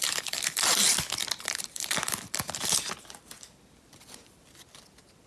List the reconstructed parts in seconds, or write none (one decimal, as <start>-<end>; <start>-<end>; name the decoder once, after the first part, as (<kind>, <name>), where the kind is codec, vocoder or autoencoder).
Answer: 0.0-5.3 (vocoder, BigVGAN v2)